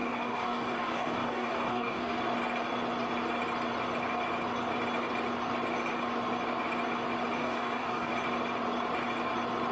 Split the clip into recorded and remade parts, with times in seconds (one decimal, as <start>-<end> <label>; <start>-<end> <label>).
0.0-2.2 remade; 2.2-7.4 recorded; 7.4-8.1 remade; 8.1-9.7 recorded